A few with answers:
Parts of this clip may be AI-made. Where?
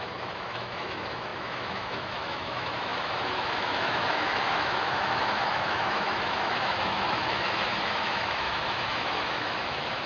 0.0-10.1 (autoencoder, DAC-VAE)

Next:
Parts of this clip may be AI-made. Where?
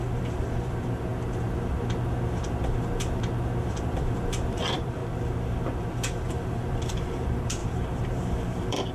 0.0-1.1 (vocoder, BigVGAN v2); 3.7-5.0; 6.3-8.9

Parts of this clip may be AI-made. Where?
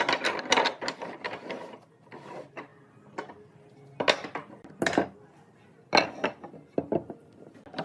none